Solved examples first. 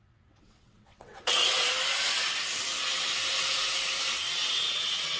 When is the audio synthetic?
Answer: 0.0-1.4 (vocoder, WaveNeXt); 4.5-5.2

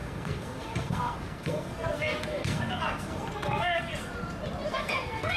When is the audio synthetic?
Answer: 0.0-4.1 (codec, SNAC); 4.7-5.4

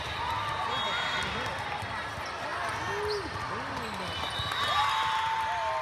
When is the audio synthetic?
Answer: none

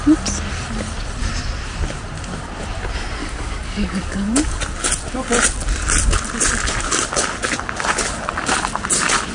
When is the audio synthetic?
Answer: 3.2-4.6 (codec, DAC)

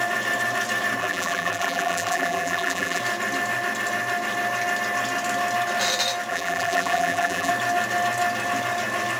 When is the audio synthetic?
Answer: 1.0-3.0 (vocoder, BigVGAN v2); 6.3-7.5

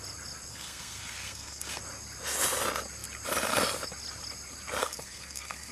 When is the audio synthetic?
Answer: 0.5-1.8 (codec, SNAC); 4.8-5.7